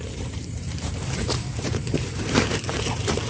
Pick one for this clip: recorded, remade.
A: remade